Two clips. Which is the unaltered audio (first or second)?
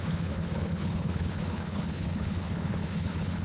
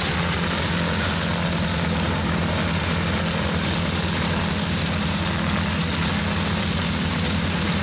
second